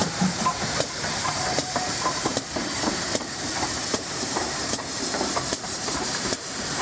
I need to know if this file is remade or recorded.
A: remade